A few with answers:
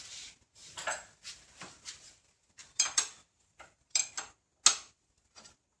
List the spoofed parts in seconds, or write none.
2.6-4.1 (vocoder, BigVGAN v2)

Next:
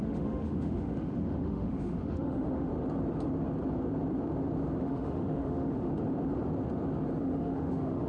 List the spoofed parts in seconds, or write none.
0.0-2.7 (autoencoder, DAC-VAE); 4.8-5.9; 7.2-8.1